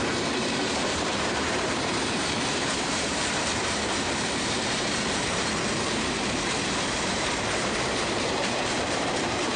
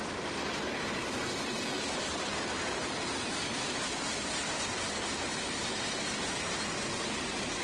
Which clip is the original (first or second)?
second